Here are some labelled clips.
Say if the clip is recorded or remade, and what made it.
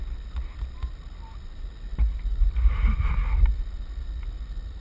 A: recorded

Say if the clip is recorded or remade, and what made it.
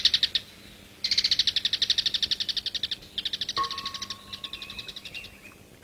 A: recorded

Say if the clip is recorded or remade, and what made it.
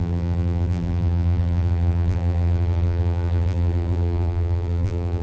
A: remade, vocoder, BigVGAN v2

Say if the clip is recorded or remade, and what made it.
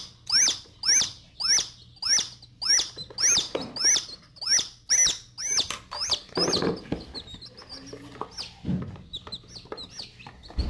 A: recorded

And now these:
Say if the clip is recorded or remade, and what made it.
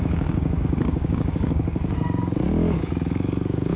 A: remade, codec, DAC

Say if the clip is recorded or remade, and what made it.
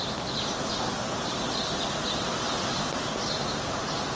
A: recorded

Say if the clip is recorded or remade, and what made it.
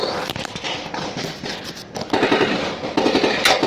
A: recorded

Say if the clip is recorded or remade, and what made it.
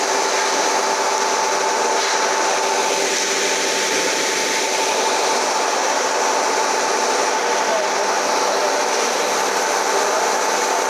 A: recorded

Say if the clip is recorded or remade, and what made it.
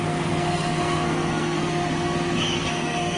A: remade, codec, SNAC